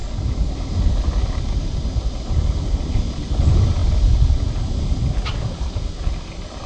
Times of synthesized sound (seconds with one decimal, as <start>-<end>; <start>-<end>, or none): none